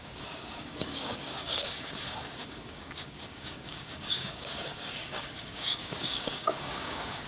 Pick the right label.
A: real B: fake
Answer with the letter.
B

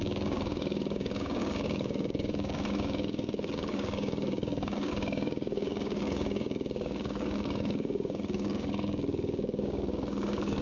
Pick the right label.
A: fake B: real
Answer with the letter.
A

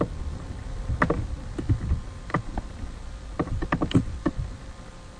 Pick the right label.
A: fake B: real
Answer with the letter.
A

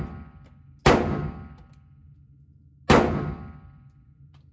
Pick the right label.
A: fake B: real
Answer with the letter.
B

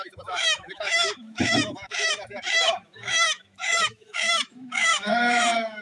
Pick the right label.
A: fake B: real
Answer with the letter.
A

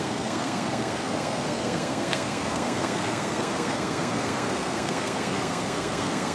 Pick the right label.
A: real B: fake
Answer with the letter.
B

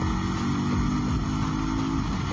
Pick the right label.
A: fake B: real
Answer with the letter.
B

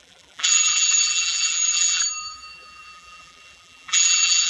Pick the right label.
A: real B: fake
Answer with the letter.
B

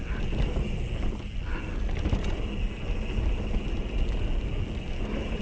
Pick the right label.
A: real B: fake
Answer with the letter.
A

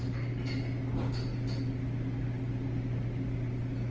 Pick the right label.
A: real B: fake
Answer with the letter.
A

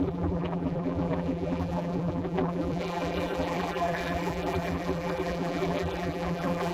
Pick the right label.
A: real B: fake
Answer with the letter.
B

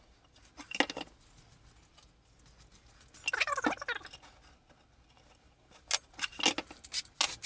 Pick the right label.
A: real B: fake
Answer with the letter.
A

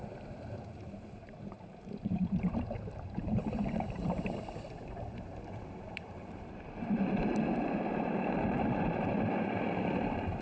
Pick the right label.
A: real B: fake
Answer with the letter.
B